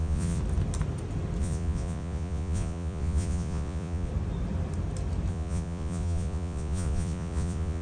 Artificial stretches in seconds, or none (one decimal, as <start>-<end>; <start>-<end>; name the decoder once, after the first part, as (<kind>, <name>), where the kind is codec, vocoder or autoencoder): 0.0-0.4 (vocoder, Vocos); 1.4-4.1; 5.3-7.8